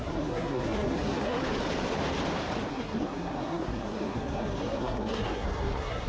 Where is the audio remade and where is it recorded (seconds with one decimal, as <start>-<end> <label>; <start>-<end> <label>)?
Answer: 0.0-1.4 remade; 1.4-2.7 recorded; 2.7-6.1 remade